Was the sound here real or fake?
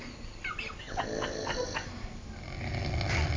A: real